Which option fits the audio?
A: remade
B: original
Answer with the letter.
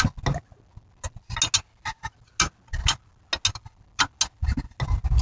B